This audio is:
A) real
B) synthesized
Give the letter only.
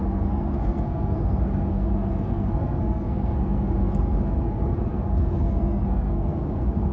B